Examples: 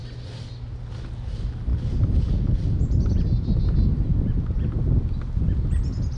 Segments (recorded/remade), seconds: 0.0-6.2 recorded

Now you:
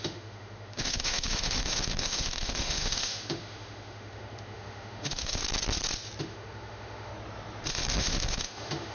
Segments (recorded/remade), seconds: 0.0-5.4 remade; 5.4-6.2 recorded; 6.2-7.1 remade; 7.1-7.7 recorded; 7.7-8.9 remade

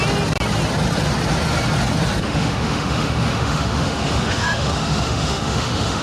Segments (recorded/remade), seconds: 0.0-2.2 recorded; 2.2-6.0 remade